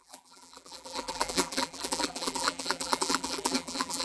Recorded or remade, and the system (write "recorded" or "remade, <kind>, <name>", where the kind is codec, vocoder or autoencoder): remade, vocoder, BigVGAN v2